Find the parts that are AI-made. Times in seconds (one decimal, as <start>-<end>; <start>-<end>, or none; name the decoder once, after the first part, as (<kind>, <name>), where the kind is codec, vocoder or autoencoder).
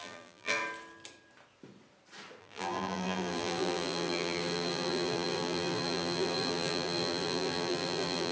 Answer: 0.0-0.6 (vocoder, BigVGAN v2); 2.4-8.3